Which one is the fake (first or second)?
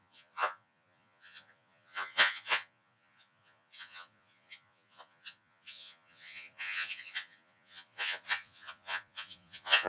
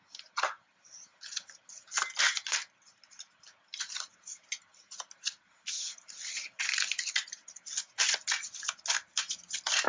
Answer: first